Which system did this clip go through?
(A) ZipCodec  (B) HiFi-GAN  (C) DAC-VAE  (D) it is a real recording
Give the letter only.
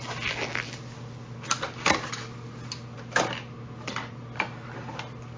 D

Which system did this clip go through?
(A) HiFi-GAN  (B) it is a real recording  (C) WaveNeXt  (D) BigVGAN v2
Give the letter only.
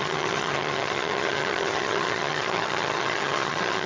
A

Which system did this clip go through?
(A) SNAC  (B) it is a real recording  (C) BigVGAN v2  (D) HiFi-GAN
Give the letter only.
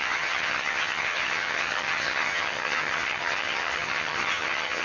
D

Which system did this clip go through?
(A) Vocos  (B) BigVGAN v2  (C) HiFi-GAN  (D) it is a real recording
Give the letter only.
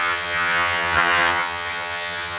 C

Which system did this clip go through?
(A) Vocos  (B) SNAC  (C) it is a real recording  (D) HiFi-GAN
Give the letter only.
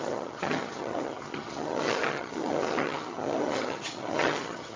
D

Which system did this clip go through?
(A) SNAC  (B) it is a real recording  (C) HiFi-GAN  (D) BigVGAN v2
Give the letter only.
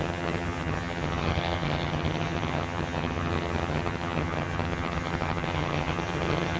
C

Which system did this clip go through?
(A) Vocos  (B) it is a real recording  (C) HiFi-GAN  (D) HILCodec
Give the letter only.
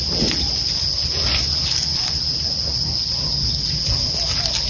B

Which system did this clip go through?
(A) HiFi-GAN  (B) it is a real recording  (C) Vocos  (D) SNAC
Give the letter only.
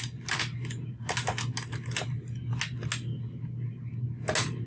B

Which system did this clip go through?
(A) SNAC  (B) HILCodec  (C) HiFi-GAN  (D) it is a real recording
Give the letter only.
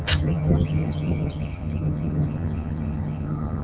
C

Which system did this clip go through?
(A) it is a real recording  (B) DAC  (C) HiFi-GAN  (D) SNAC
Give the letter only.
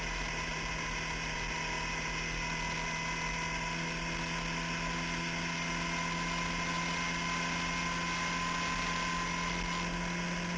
A